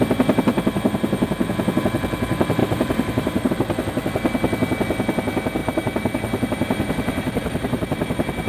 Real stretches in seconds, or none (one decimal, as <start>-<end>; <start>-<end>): 0.0-2.6; 3.5-5.6